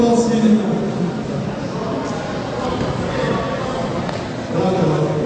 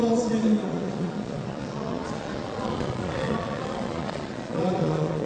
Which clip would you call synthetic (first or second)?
second